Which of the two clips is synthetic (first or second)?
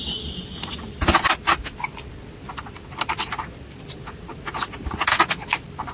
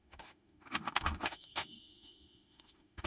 second